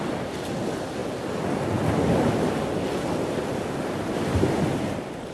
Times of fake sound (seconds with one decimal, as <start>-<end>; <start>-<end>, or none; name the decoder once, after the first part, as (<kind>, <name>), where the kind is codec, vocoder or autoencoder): none